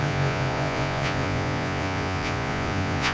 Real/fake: fake